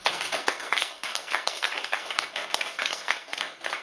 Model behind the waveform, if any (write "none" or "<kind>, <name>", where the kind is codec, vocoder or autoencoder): codec, SNAC